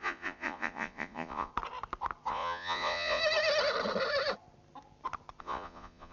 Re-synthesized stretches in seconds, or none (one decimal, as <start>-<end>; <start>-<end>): 0.0-1.5; 2.3-3.2; 5.4-6.1